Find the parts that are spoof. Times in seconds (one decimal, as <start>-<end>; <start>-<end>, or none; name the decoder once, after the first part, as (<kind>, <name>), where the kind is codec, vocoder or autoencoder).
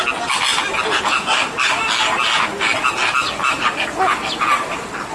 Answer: none